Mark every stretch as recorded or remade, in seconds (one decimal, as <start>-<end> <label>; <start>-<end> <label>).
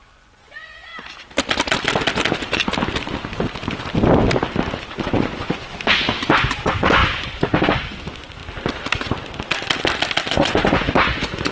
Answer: 0.0-0.9 remade; 0.9-4.8 recorded; 4.8-5.7 remade; 5.7-6.3 recorded; 6.3-8.4 remade; 8.4-10.3 recorded; 10.3-11.5 remade